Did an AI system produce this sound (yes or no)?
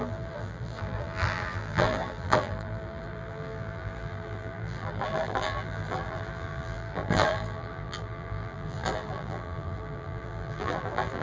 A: yes